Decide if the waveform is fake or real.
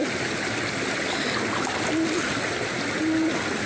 real